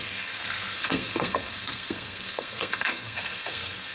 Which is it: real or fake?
fake